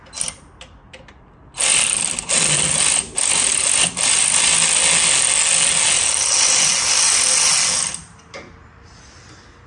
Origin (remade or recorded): recorded